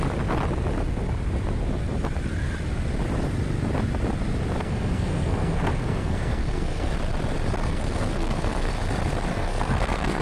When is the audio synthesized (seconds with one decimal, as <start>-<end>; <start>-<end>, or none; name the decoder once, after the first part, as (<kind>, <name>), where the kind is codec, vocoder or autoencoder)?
4.6-6.9 (codec, SNAC); 7.6-8.7; 9.3-10.2